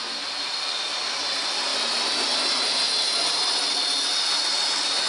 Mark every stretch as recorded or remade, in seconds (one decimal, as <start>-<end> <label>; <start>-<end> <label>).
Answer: 0.0-5.1 recorded